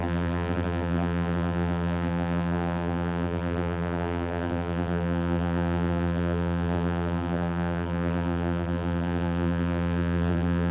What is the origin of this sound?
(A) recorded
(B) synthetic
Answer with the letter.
B